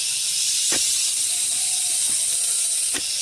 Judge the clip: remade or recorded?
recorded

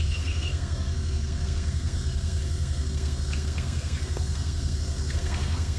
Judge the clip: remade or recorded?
remade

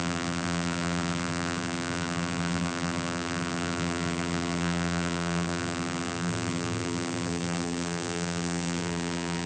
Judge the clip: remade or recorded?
remade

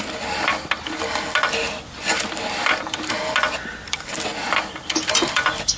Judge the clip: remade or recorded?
recorded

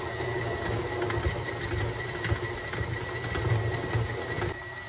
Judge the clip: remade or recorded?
recorded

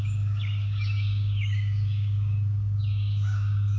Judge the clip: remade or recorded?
remade